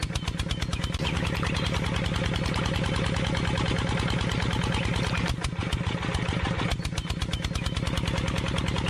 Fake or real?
real